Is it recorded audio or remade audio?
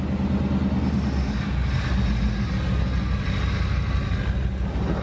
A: recorded